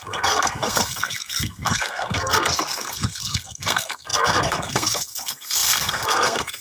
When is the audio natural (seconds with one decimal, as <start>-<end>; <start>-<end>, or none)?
none